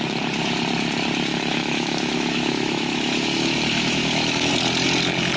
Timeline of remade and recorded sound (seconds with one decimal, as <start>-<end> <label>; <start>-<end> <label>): 0.0-1.3 recorded; 1.3-4.5 remade; 4.5-5.4 recorded